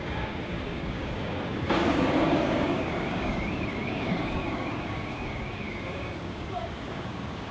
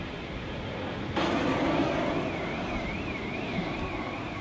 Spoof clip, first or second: first